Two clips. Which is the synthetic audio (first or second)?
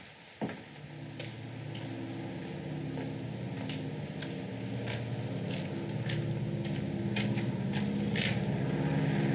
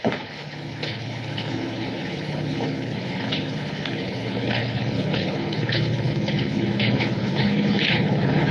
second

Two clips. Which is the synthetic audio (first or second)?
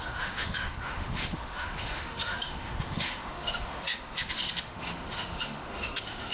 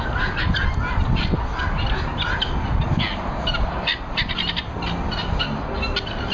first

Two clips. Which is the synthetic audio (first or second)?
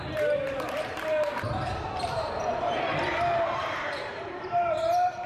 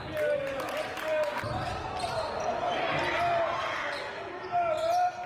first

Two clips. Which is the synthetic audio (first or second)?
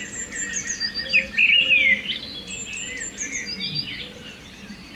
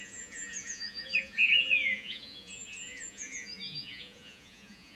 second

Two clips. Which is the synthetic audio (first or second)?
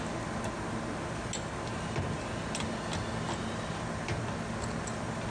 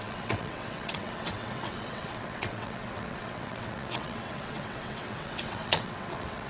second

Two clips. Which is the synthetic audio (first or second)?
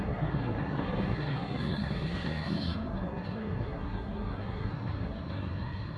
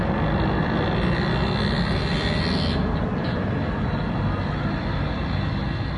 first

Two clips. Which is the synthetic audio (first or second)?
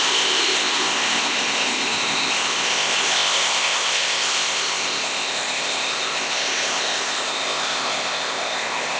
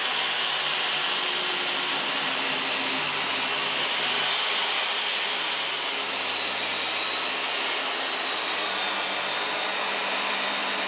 first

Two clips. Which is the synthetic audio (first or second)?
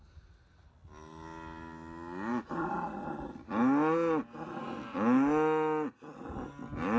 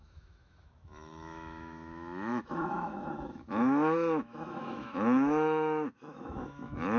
second